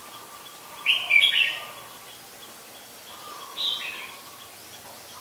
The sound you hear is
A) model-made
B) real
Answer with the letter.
B